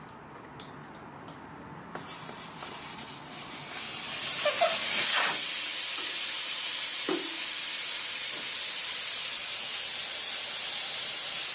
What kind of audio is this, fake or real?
real